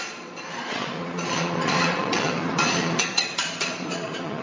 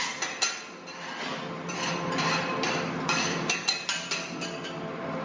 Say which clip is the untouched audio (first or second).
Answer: second